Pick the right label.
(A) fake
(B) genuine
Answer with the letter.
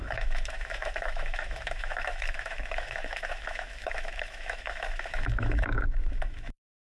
A